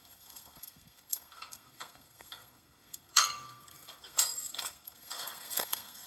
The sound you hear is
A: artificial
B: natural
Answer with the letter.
A